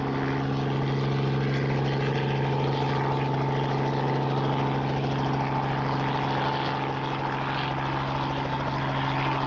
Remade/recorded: recorded